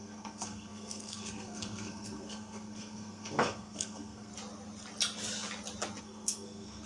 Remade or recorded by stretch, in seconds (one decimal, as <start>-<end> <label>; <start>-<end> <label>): 0.0-4.3 remade; 4.3-6.0 recorded; 6.0-6.9 remade